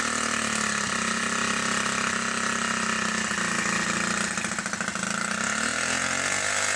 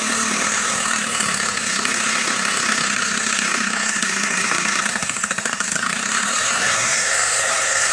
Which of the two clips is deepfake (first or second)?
second